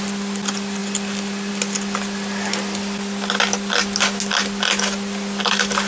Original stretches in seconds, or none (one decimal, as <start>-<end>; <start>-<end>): 0.0-5.9